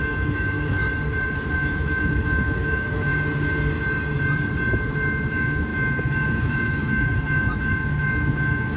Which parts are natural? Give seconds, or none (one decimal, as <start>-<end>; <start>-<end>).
0.8-1.5; 3.1-5.3